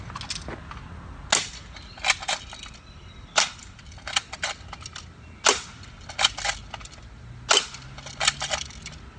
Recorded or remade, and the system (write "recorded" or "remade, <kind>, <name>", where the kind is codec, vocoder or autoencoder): recorded